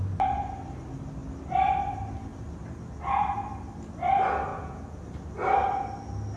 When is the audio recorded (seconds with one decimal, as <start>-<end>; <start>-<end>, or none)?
0.0-4.5; 5.0-6.4